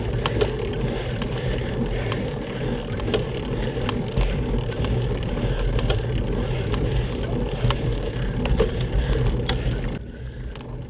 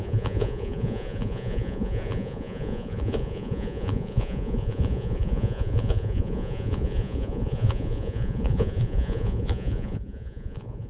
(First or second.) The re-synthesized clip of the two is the second